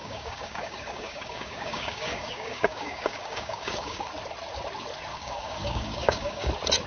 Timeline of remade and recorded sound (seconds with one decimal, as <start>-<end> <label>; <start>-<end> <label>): 0.0-4.1 remade; 4.1-5.1 recorded; 5.1-6.5 remade; 6.5-6.9 recorded